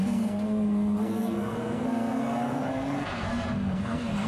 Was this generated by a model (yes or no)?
yes